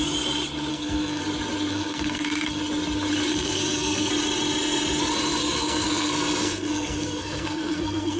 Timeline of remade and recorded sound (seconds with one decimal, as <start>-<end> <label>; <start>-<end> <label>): 0.0-0.7 recorded; 0.7-1.2 remade; 1.2-1.7 recorded; 1.7-2.6 remade; 2.6-3.3 recorded; 3.3-4.1 remade; 4.1-5.4 recorded; 5.4-8.2 remade